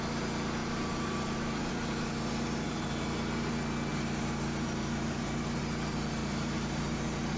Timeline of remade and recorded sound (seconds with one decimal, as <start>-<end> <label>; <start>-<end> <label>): 0.0-0.6 recorded; 0.6-3.5 remade; 3.5-3.9 recorded; 3.9-5.6 remade; 5.6-6.2 recorded; 6.2-6.8 remade; 6.8-7.4 recorded